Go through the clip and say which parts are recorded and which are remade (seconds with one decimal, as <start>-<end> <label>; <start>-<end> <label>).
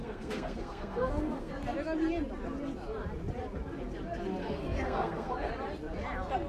0.0-1.5 remade; 1.5-4.4 recorded; 4.4-5.5 remade; 5.5-6.5 recorded